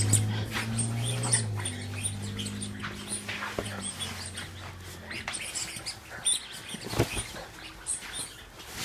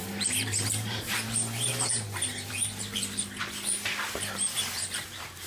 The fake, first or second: second